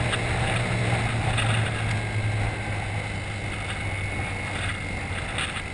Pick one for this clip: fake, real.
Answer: real